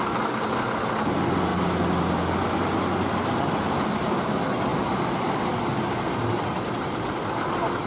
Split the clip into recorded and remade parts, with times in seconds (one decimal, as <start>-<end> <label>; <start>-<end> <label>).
0.0-4.7 recorded; 4.7-5.7 remade; 5.7-7.9 recorded